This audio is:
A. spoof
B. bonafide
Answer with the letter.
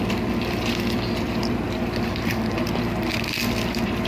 A